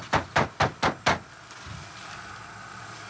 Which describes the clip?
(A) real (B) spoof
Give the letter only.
A